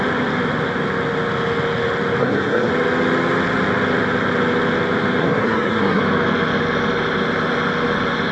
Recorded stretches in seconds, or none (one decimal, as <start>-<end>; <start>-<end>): 0.0-2.2; 2.7-5.2; 6.0-8.3